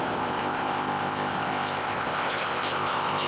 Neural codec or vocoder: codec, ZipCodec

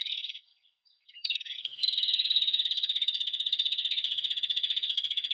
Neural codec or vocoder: codec, SNAC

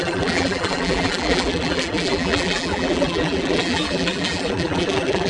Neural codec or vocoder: vocoder, BigVGAN v2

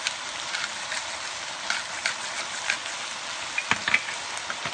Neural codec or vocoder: none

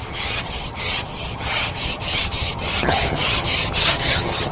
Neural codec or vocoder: vocoder, HiFi-GAN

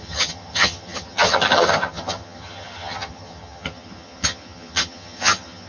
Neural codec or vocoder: vocoder, HiFi-GAN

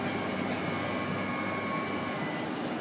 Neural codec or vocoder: none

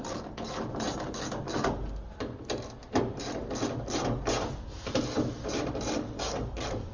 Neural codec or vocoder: none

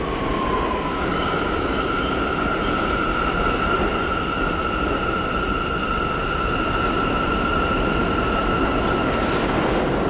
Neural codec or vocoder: none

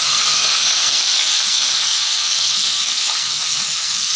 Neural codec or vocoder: codec, SNAC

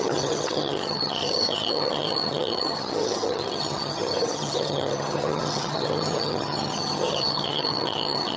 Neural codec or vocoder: vocoder, HiFi-GAN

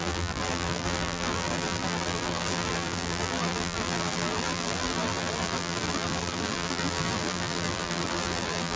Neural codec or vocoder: vocoder, BigVGAN v2